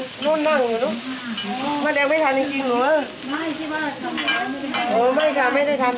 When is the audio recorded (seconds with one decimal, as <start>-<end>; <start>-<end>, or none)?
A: 1.2-6.0